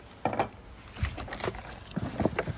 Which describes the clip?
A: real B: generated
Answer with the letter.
A